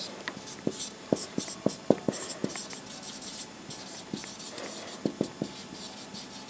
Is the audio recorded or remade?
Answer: recorded